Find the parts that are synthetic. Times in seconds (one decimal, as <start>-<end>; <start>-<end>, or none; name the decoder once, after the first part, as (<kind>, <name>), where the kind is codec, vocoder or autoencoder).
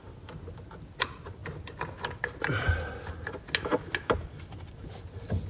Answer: none